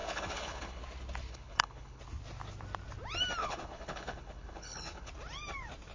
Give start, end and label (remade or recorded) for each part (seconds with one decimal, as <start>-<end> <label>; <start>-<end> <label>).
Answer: 0.0-0.8 remade; 0.8-1.3 recorded; 1.3-2.0 remade; 2.0-3.4 recorded; 3.4-5.1 remade; 5.1-5.9 recorded